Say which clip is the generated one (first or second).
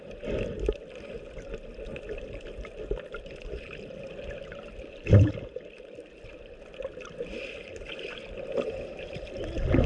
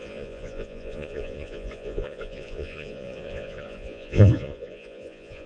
second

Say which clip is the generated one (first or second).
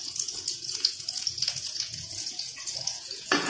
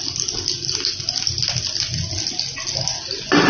first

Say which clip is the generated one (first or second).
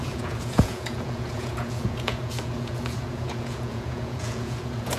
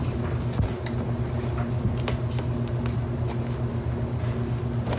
first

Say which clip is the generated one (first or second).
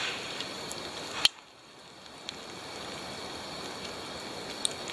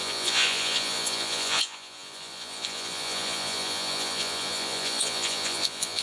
second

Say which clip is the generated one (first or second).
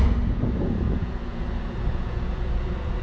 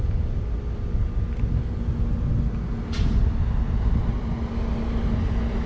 first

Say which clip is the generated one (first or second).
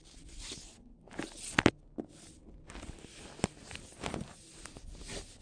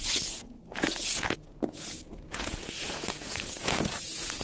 second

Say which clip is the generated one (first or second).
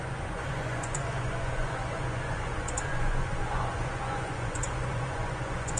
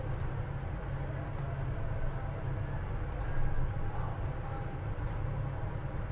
first